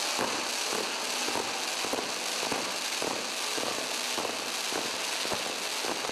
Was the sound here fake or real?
real